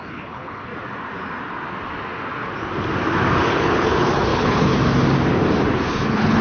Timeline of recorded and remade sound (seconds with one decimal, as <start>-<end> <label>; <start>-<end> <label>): 0.0-0.7 remade; 0.7-3.4 recorded; 3.4-4.7 remade; 4.7-5.9 recorded; 5.9-6.4 remade